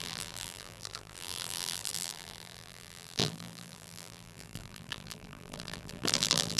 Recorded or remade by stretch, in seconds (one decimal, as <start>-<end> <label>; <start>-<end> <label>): 0.0-6.6 remade